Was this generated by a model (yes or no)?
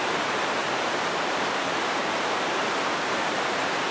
yes